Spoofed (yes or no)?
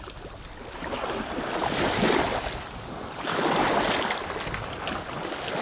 no